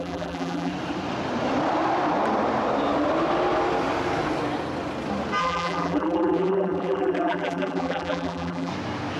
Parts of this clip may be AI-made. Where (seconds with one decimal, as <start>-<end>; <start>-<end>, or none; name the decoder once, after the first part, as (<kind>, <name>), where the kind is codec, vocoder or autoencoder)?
0.0-0.7 (vocoder, BigVGAN v2); 5.4-8.7

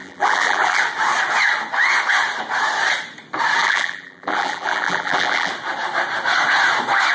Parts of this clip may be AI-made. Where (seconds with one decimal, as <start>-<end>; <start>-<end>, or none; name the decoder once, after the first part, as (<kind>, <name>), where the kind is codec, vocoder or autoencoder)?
0.0-0.8 (vocoder, BigVGAN v2); 3.6-5.5

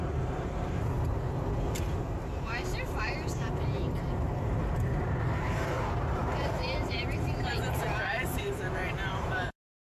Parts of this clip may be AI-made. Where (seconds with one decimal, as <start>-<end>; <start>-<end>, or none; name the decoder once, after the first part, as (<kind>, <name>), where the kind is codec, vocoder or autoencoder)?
0.0-6.2 (vocoder, BigVGAN v2); 6.9-9.9